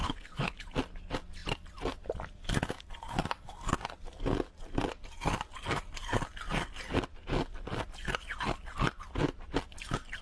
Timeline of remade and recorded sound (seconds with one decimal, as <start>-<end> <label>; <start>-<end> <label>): 0.0-0.6 remade; 0.6-10.2 recorded